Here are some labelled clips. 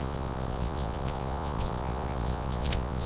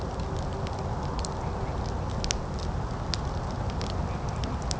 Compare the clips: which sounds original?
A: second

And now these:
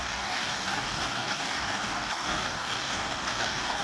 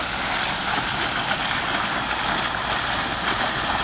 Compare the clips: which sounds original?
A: second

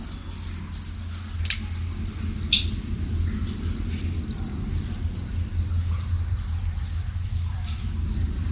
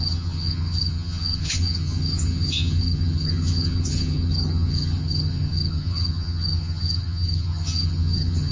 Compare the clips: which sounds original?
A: first